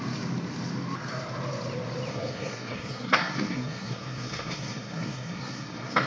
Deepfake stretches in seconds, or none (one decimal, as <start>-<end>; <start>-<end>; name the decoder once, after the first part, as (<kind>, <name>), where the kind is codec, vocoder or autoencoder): 2.1-6.1 (codec, SNAC)